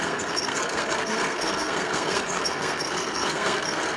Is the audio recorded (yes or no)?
no